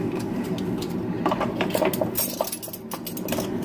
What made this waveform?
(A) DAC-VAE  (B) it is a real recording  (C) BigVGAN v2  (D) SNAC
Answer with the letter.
B